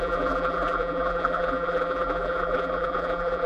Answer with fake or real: fake